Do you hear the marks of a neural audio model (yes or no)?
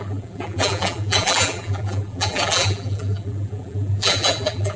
yes